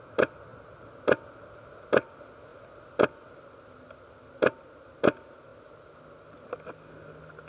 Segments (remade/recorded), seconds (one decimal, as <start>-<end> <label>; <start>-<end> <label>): 0.0-7.5 recorded